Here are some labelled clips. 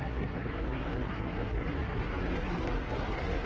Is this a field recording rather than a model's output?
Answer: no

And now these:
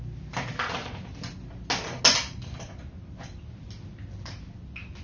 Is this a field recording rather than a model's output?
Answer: yes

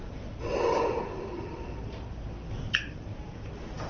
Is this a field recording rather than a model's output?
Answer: yes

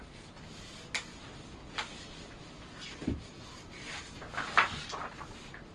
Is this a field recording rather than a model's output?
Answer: yes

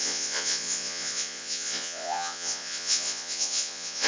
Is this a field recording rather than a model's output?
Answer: no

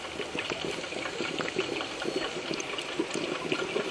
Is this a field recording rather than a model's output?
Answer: yes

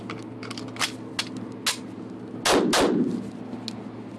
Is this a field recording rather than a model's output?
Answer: yes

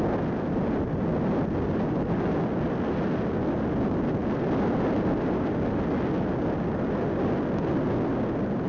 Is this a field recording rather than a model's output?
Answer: yes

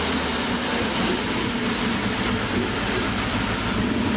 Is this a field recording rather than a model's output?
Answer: yes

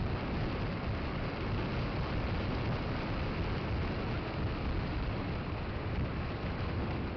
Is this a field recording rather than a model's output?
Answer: yes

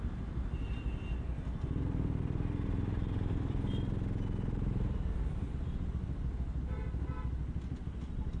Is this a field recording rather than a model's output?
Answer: yes